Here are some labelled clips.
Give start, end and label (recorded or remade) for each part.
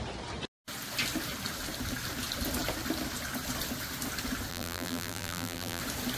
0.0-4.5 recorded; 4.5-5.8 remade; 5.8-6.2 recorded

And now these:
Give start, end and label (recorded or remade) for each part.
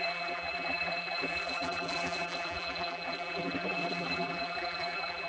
0.0-5.3 remade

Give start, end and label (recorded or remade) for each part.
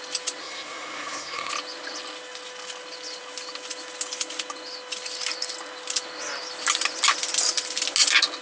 0.0-0.4 recorded; 0.4-1.5 remade; 1.5-8.4 recorded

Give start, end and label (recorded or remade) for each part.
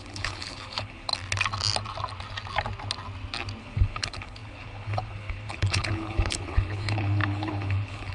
0.0-1.1 remade; 1.1-3.6 recorded; 3.6-8.1 remade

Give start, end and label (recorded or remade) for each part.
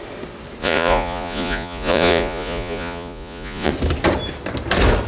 0.0-0.6 recorded; 0.6-3.7 remade; 3.7-5.1 recorded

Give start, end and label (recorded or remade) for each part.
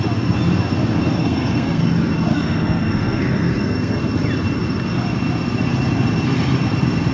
0.0-1.2 recorded; 1.2-1.8 remade; 1.8-2.3 recorded; 2.3-4.0 remade; 4.0-7.1 recorded